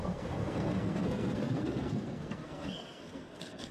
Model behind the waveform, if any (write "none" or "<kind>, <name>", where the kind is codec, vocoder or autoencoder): codec, SNAC